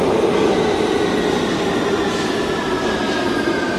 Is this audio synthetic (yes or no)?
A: no